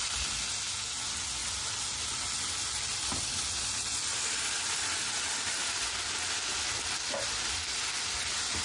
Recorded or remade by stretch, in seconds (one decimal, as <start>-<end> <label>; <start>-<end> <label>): 0.0-8.6 recorded